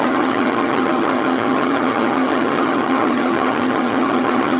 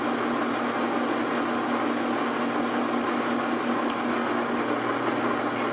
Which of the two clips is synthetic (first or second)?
first